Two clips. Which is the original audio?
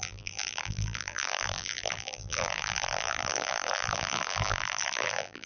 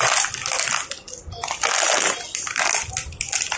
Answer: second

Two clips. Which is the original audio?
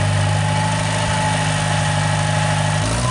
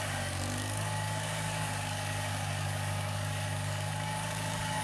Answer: first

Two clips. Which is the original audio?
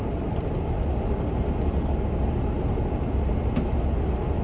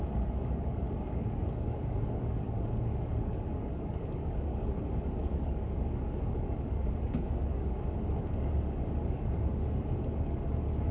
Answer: first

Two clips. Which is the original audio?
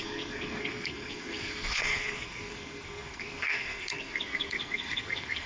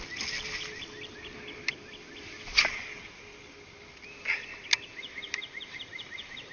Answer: second